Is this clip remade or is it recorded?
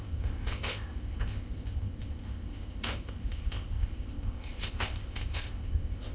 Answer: remade